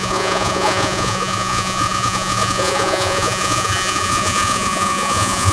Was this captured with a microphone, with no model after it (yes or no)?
no